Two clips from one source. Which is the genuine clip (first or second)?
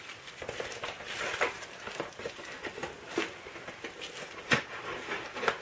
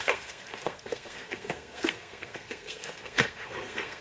first